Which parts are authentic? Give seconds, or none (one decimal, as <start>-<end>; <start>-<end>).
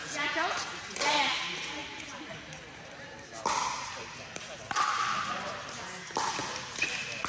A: 0.6-7.3